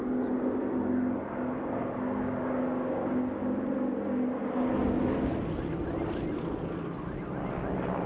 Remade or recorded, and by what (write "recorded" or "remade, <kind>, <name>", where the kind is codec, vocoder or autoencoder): recorded